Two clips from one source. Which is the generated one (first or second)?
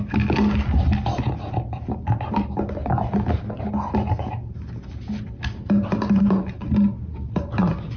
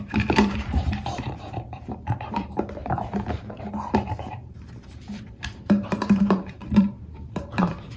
second